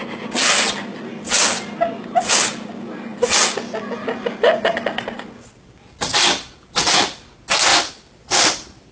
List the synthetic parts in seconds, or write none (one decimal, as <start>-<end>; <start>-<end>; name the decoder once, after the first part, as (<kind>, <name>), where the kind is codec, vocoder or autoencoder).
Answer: 7.7-8.9 (vocoder, BigVGAN v2)